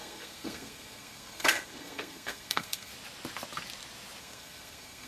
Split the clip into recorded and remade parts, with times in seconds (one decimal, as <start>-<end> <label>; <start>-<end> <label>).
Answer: 0.0-2.9 remade; 2.9-4.2 recorded; 4.2-5.1 remade